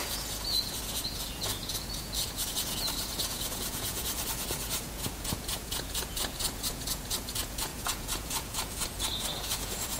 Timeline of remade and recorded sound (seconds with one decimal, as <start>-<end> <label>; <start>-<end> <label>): 0.0-10.0 remade